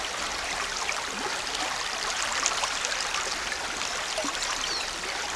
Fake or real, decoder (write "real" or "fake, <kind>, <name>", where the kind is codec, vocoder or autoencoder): real